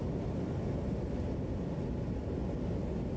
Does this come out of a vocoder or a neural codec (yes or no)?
no